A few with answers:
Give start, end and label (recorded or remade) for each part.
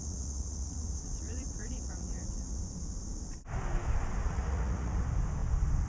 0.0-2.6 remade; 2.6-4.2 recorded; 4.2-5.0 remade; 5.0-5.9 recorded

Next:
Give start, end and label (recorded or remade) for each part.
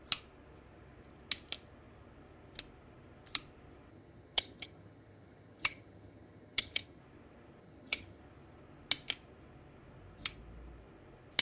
0.0-3.9 recorded; 3.9-7.0 remade; 7.0-7.6 recorded; 7.6-8.2 remade; 8.2-11.4 recorded